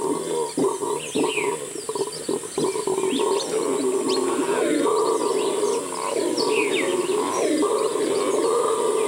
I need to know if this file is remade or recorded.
recorded